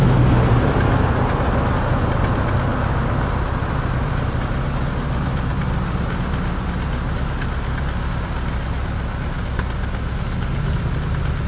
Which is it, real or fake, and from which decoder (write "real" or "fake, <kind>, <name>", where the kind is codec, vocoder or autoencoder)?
real